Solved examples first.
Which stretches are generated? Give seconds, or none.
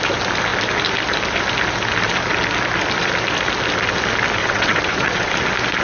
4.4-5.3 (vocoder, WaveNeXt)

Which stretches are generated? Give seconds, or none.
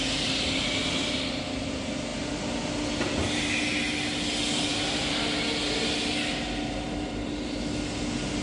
none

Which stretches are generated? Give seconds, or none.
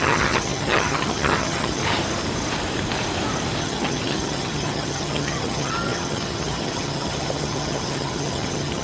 0.0-1.8 (vocoder, HiFi-GAN); 3.6-8.8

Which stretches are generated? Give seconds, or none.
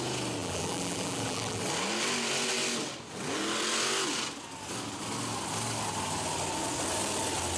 0.4-1.6 (vocoder, BigVGAN v2)